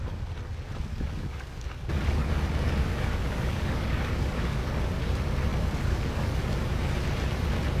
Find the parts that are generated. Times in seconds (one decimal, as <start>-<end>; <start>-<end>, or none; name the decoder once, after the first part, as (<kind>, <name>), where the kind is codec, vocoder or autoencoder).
0.9-4.8 (codec, DAC); 5.5-6.4